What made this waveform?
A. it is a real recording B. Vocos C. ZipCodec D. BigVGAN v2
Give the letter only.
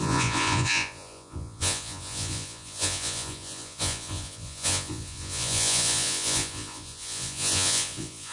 B